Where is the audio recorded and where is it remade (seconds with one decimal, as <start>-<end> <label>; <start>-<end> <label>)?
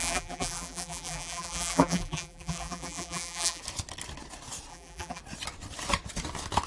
0.0-3.6 remade; 3.6-4.7 recorded; 4.7-5.2 remade; 5.2-6.7 recorded